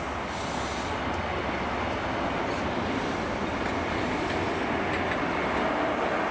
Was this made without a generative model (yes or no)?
yes